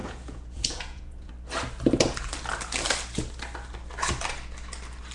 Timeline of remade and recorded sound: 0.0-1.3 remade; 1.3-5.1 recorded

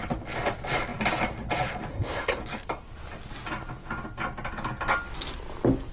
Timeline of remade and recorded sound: 0.0-1.9 recorded; 1.9-2.4 remade; 2.4-5.9 recorded

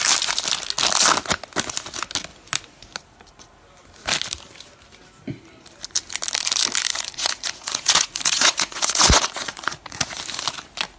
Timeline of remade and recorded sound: 0.0-6.9 recorded; 6.9-10.2 remade; 10.2-11.0 recorded

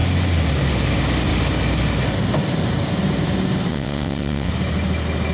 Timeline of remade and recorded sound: 0.0-3.7 recorded; 3.7-4.5 remade; 4.5-5.3 recorded

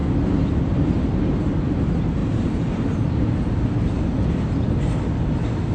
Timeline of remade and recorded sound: 0.0-5.7 recorded